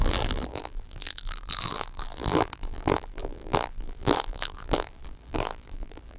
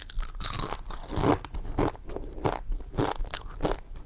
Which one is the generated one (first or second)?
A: first